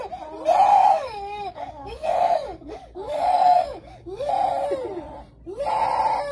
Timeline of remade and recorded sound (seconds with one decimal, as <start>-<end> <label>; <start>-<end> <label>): 0.0-0.7 recorded; 0.7-4.3 remade; 4.3-6.3 recorded